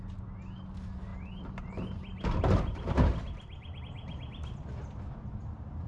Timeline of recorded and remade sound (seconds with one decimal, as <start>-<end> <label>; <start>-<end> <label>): 0.0-1.1 recorded; 1.1-3.8 remade; 3.8-5.9 recorded